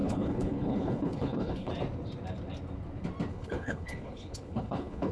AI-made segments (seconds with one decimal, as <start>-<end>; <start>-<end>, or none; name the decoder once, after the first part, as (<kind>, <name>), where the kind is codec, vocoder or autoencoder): 0.0-1.7 (codec, HILCodec); 3.3-5.1